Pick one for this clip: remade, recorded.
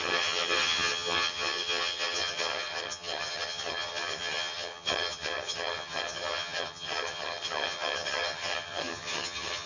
remade